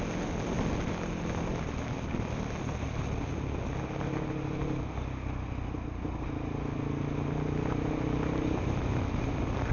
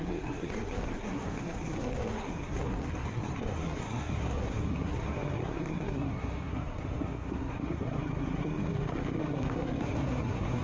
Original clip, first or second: first